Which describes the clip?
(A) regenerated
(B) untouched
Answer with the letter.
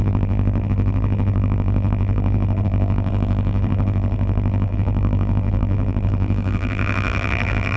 A